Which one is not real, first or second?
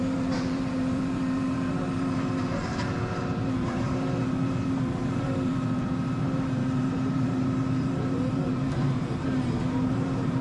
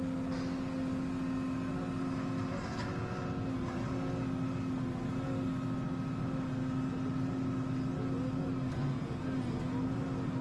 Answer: first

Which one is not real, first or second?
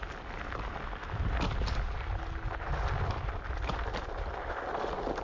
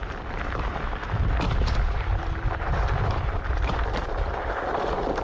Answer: second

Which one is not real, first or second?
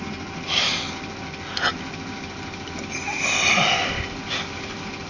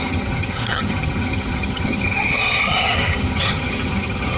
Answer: second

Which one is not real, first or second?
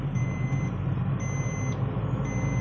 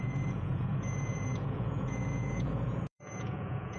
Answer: second